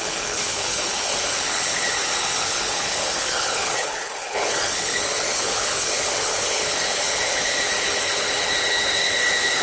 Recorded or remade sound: remade